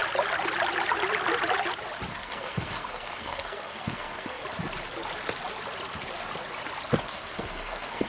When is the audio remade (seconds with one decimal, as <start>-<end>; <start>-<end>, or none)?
2.1-4.4; 7.0-8.1